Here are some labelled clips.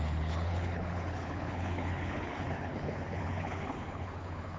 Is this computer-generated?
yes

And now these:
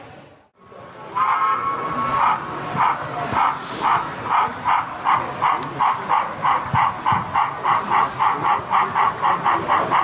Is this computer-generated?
no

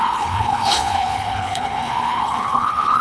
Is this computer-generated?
yes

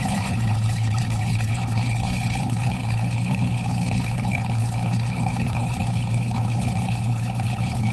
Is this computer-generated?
yes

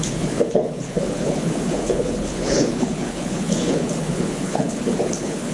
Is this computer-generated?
yes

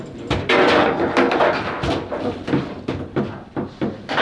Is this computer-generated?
no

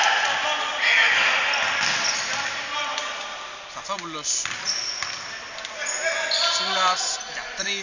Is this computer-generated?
no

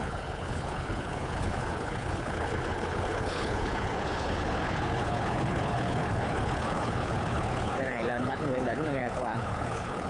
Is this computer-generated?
yes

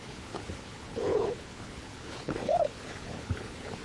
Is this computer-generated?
yes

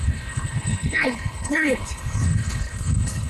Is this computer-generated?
yes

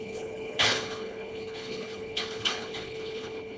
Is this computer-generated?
yes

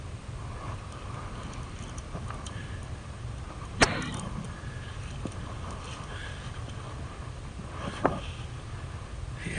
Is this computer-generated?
no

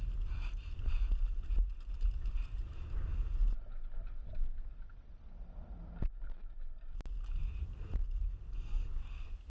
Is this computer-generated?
no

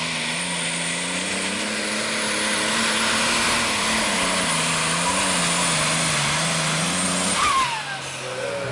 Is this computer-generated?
no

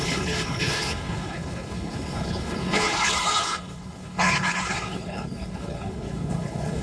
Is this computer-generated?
yes